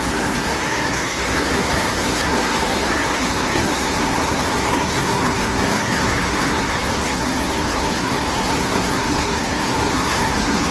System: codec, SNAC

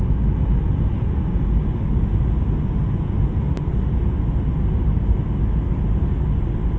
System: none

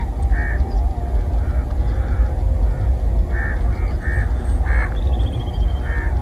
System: none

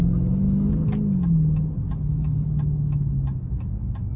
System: none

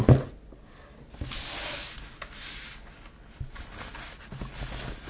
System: none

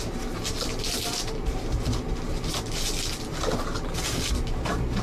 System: none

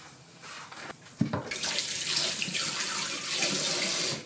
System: none